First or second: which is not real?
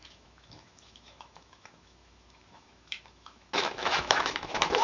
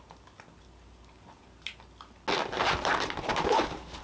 first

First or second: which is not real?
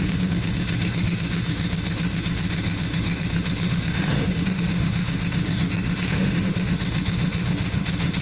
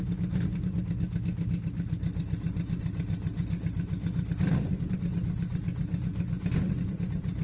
first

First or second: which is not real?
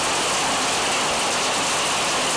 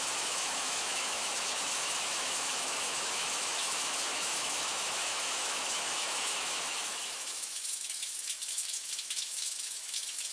second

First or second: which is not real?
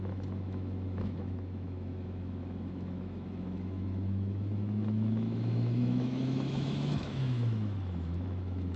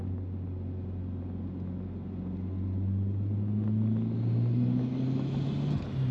first